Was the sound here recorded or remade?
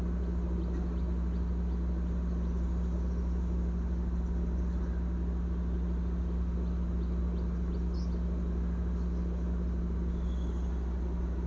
recorded